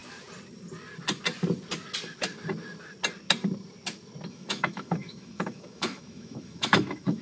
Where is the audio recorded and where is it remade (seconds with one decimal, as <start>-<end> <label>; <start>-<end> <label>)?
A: 0.0-4.3 recorded; 4.3-7.2 remade